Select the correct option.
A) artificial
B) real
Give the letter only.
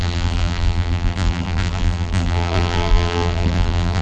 A